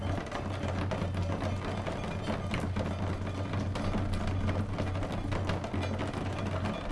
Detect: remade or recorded recorded